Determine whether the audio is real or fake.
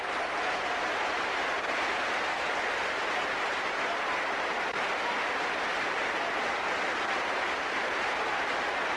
real